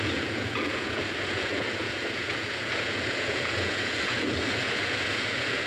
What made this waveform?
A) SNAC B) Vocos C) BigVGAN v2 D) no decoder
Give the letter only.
B